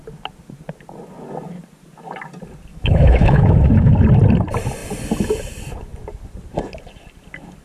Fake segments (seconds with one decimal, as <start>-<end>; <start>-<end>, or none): 2.7-3.9